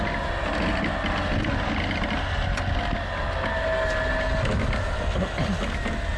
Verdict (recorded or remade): recorded